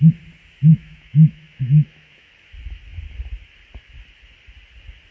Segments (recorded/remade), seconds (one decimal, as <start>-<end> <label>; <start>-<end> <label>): 0.0-0.7 recorded; 0.7-2.3 remade; 2.3-5.1 recorded